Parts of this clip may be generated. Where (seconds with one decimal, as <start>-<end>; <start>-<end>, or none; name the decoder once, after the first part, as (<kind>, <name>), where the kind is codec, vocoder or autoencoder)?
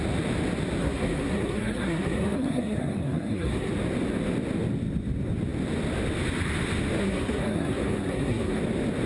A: 0.8-3.7 (codec, SNAC); 7.0-8.6